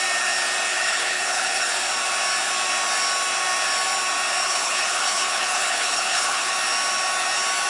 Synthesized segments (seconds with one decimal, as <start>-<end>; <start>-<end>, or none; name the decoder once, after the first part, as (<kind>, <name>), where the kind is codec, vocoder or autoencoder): 0.7-1.7 (codec, HILCodec); 4.4-6.5